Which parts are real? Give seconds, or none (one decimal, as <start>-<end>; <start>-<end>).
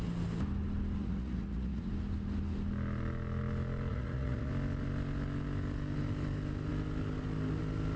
0.0-1.0; 1.9-3.9; 4.5-8.0